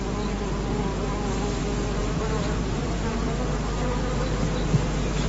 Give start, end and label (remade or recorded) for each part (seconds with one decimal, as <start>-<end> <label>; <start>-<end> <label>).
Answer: 0.0-2.0 recorded; 2.0-3.3 remade; 3.3-5.3 recorded